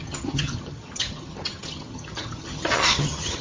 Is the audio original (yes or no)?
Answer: no